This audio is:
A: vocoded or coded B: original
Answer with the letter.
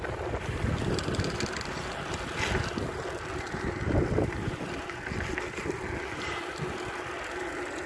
B